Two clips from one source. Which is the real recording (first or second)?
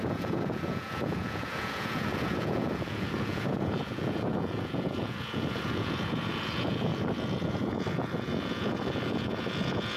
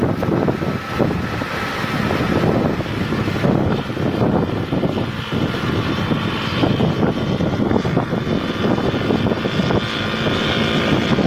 second